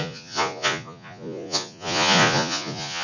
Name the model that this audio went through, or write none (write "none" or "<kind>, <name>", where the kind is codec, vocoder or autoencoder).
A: vocoder, Vocos